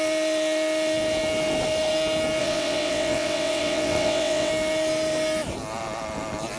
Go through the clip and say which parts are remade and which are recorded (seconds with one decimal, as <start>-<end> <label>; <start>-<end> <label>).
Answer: 0.0-2.4 recorded; 2.4-4.5 remade; 4.5-6.6 recorded

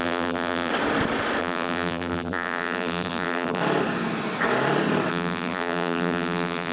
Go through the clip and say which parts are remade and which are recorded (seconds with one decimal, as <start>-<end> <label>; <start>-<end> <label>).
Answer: 0.0-0.7 remade; 0.7-1.4 recorded; 1.4-3.6 remade; 3.6-5.1 recorded; 5.1-6.7 remade

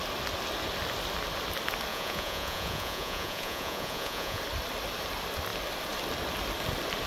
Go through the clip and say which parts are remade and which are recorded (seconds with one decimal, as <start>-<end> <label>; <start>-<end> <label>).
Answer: 0.0-1.9 recorded; 1.9-4.4 remade; 4.4-7.1 recorded

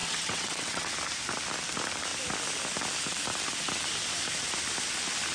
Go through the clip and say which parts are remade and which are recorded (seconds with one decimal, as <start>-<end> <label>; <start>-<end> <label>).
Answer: 0.0-0.9 remade; 0.9-5.3 recorded